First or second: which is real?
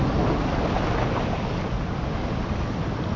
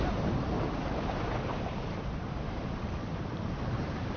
first